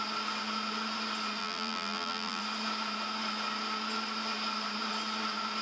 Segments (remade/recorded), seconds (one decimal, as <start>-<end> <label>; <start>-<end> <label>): 0.0-1.4 recorded; 1.4-2.4 remade; 2.4-5.6 recorded